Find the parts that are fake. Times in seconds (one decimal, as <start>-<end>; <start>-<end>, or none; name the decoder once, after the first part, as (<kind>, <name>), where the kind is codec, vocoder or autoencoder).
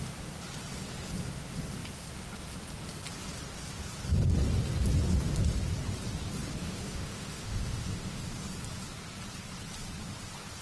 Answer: 6.6-8.2 (autoencoder, DAC-VAE)